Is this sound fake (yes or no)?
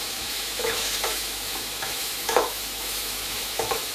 yes